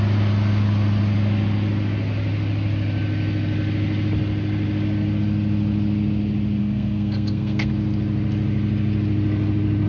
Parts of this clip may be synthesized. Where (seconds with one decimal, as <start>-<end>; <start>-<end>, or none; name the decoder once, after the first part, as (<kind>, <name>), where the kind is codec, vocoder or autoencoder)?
6.6-7.7 (codec, SNAC)